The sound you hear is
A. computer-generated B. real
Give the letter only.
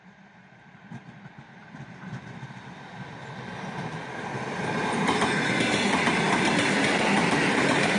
B